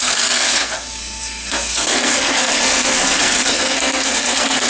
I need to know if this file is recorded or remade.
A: remade